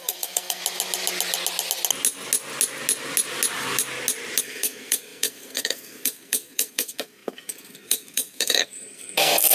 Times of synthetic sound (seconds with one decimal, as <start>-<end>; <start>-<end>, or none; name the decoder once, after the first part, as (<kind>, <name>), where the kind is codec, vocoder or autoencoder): 0.0-0.6 (codec, SNAC); 4.4-9.5